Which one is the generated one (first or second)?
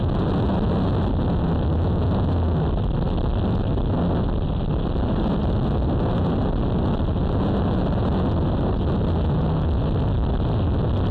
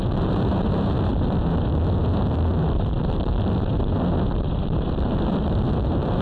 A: second